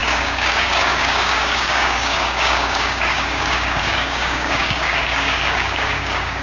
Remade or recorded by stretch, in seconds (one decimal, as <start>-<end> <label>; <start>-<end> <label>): 0.0-6.4 remade